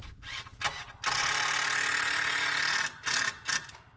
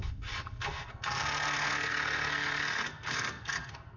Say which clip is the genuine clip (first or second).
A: first